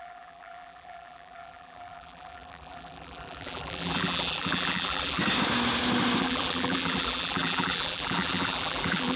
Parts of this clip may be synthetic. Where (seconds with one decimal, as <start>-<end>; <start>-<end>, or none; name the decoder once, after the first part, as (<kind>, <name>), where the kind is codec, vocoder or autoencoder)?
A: 0.0-5.2 (vocoder, BigVGAN v2); 6.2-9.2